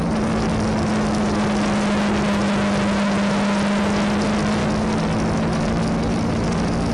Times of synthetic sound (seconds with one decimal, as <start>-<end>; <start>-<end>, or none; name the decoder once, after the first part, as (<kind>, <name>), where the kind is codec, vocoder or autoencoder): none